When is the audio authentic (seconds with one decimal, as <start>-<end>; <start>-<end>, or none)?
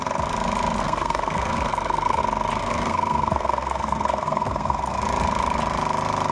0.0-0.8; 2.2-2.6; 5.0-6.3